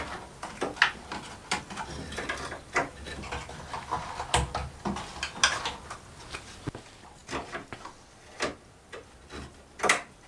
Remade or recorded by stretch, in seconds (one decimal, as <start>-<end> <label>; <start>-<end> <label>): 0.0-10.3 recorded